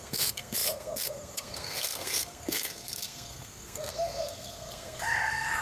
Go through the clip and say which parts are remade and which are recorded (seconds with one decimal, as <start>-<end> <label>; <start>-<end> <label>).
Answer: 0.0-5.6 remade